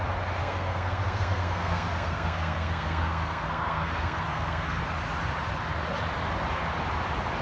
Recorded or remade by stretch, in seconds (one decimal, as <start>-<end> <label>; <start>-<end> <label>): 0.0-0.4 recorded; 0.4-4.8 remade; 4.8-7.4 recorded